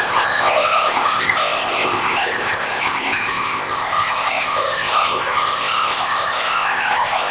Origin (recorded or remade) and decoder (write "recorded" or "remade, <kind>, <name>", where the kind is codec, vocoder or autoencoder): remade, codec, ZipCodec